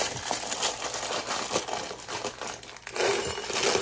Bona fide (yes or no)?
yes